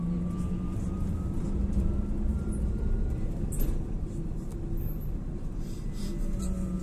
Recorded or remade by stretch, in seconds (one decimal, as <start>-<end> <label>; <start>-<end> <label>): 0.0-2.3 recorded; 2.3-6.1 remade; 6.1-6.8 recorded